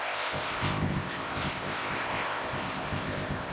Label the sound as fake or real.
fake